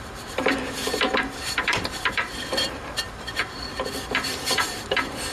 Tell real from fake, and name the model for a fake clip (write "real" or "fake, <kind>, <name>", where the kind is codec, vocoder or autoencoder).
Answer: fake, vocoder, BigVGAN v2